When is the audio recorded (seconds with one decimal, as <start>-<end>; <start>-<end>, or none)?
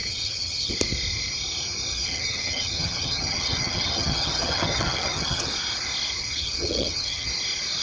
0.7-1.9; 5.5-6.2; 7.3-7.8